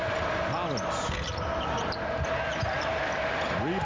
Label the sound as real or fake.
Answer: real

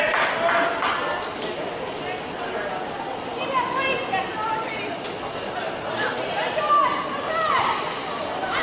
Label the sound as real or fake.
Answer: real